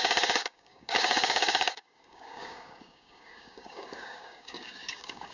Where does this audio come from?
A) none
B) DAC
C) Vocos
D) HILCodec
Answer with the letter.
B